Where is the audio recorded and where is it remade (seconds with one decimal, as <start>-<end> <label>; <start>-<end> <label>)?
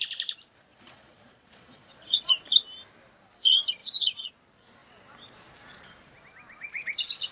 0.0-0.7 recorded; 0.7-2.3 remade; 2.3-3.8 recorded; 3.8-4.3 remade; 4.3-7.3 recorded